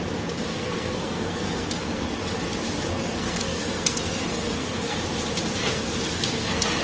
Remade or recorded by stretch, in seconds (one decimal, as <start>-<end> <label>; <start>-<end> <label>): 0.0-0.5 recorded; 0.5-2.2 remade; 2.2-2.9 recorded; 2.9-5.0 remade; 5.0-5.6 recorded; 5.6-6.8 remade

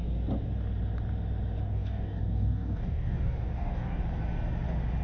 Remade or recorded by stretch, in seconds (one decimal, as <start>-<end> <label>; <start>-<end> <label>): 0.0-1.6 recorded; 1.6-4.0 remade; 4.0-5.0 recorded

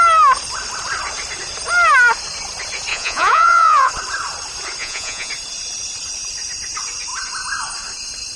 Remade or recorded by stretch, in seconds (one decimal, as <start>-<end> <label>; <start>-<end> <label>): 0.0-2.9 recorded; 2.9-3.9 remade; 3.9-4.8 recorded; 4.8-5.3 remade; 5.3-8.4 recorded